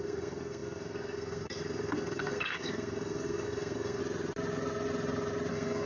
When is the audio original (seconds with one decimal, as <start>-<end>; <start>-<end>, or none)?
4.0-5.5